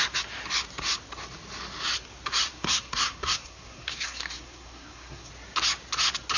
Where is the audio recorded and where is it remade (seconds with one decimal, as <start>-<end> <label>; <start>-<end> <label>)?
0.0-2.5 recorded; 2.5-5.3 remade; 5.3-6.4 recorded